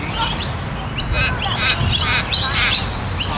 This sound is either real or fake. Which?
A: real